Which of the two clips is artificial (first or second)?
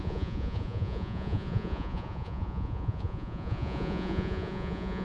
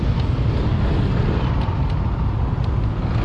first